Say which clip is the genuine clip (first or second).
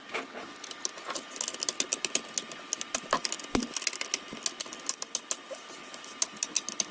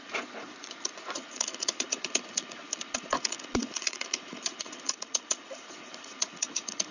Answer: first